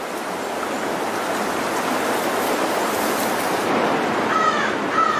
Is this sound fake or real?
real